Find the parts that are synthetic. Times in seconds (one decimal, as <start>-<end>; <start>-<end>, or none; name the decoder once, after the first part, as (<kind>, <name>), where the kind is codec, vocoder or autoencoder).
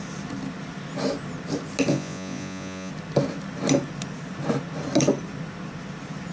1.9-2.9 (vocoder, Vocos)